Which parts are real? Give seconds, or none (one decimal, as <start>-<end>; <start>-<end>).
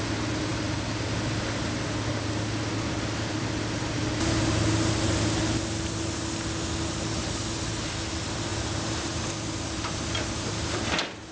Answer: 0.0-8.5; 9.3-11.3